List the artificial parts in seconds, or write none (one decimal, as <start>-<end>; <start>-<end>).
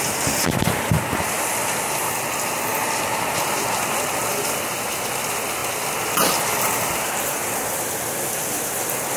none